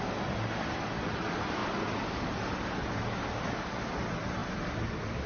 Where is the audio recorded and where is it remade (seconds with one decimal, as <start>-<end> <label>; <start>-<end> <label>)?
0.0-5.3 recorded